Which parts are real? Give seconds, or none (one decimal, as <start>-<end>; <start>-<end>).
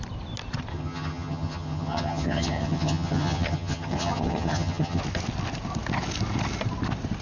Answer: 0.0-0.7; 5.0-7.2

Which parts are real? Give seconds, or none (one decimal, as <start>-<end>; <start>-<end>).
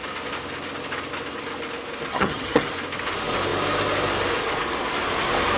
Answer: 0.0-2.1; 2.7-5.6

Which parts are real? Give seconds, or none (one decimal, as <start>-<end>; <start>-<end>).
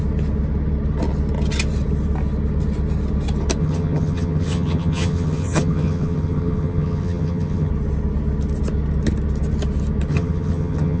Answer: 0.0-3.6; 7.7-10.1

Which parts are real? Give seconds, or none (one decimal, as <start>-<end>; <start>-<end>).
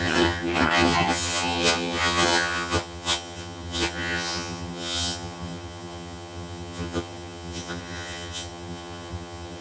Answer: none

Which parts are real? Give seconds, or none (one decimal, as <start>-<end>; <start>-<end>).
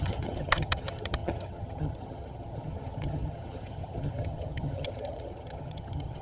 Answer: none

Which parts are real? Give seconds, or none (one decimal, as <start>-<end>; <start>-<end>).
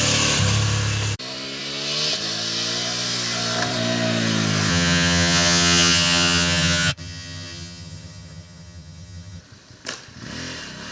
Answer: 0.0-4.7; 9.4-10.9